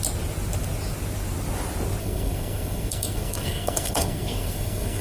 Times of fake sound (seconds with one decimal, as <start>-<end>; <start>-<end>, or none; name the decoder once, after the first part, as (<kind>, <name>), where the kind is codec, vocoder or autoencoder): 2.0-5.0 (codec, SNAC)